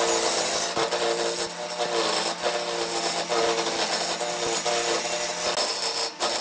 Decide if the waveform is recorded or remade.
recorded